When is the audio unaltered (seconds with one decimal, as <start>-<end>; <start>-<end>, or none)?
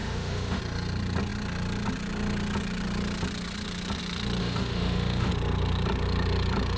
0.6-4.4; 5.3-6.8